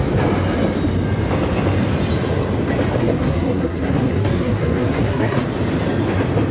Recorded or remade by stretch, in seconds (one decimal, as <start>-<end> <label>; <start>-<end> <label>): 0.0-3.0 recorded; 3.0-5.4 remade; 5.4-6.5 recorded